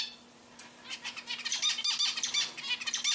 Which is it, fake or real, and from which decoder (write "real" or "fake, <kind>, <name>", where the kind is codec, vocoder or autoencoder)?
real